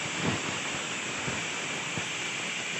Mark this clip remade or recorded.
recorded